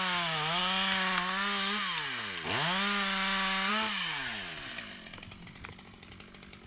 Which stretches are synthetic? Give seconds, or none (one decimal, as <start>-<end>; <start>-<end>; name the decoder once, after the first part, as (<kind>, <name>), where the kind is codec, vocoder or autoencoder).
none